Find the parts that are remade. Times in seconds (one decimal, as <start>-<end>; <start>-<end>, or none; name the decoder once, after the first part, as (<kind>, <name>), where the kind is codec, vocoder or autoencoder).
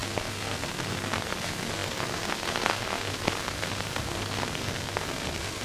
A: 0.0-5.6 (codec, SNAC)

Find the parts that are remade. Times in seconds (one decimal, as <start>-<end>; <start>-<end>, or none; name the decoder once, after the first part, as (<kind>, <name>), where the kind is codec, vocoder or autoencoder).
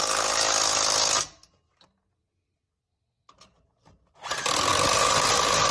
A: none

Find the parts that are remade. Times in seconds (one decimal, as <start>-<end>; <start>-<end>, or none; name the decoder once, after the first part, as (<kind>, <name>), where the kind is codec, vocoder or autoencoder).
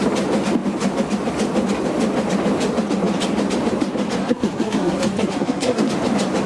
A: 4.2-5.9 (codec, SNAC)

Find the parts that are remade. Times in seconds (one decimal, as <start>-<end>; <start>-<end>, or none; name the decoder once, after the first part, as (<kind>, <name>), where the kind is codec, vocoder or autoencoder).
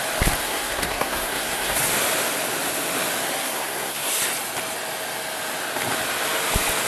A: 0.4-1.8 (codec, SNAC); 3.4-4.1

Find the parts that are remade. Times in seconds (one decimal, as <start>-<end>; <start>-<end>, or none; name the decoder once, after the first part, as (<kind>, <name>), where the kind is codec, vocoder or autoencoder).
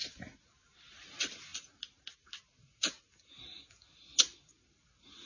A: none